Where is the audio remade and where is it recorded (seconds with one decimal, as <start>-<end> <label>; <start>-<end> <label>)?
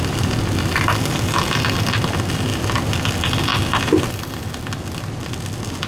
0.0-5.9 recorded